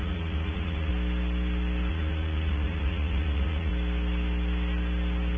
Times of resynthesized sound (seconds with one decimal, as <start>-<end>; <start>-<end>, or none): 0.0-0.9; 1.9-3.7